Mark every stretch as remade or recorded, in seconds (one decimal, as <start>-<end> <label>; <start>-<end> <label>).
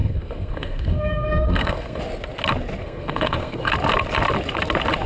0.0-2.0 remade; 2.0-2.8 recorded; 2.8-3.7 remade; 3.7-5.1 recorded